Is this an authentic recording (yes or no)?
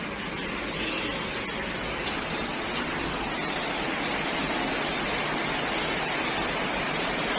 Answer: yes